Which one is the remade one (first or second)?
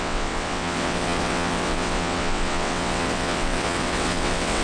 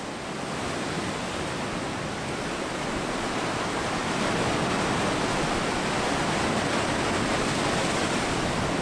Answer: first